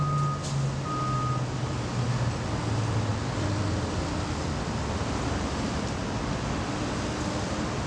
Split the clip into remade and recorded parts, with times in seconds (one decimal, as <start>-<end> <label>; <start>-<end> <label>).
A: 0.0-3.1 recorded; 3.1-6.3 remade; 6.3-7.9 recorded